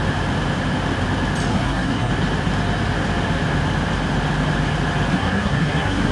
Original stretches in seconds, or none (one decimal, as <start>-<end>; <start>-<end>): 0.0-1.5; 2.1-5.1